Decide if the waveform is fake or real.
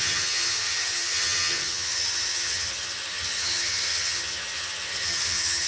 fake